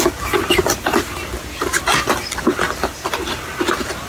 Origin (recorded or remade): recorded